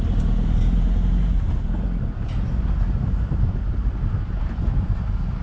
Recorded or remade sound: remade